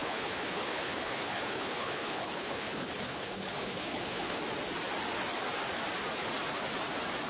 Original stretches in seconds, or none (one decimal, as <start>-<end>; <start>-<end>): 4.4-7.3